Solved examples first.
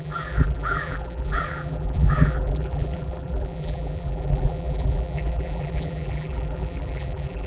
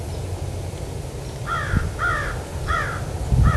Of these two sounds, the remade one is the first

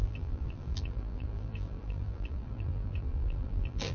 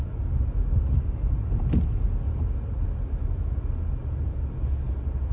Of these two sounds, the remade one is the first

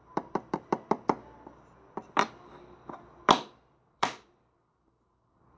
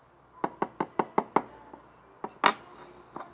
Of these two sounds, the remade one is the first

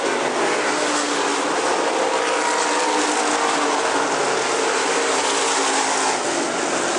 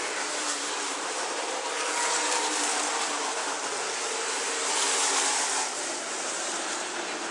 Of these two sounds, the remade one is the second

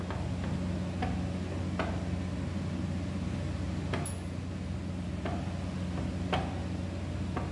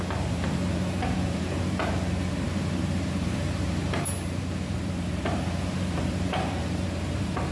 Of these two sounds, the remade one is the second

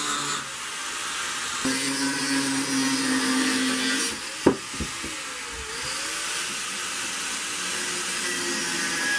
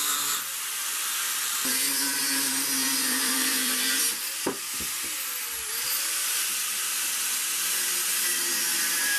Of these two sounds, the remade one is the second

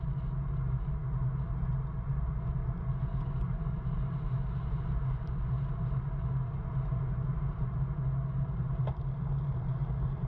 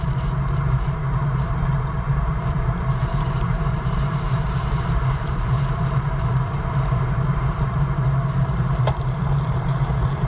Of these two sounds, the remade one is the second